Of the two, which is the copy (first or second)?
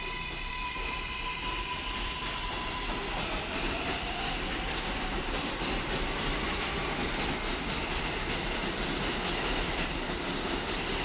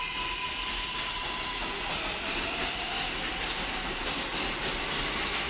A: first